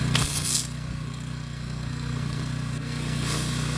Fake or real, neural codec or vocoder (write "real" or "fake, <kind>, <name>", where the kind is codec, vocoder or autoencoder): fake, codec, SNAC